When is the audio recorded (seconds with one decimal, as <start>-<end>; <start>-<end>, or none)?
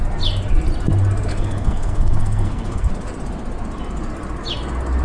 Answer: 0.0-1.3; 2.9-5.0